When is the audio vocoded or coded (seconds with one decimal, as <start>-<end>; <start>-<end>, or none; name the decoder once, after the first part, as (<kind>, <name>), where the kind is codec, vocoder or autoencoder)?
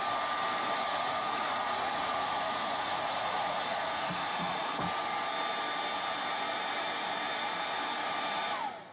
0.9-4.7 (vocoder, Vocos)